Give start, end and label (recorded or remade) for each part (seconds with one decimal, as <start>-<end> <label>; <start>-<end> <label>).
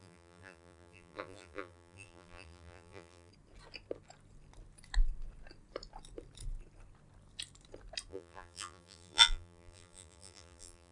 0.0-3.3 remade; 3.3-8.1 recorded; 8.1-10.9 remade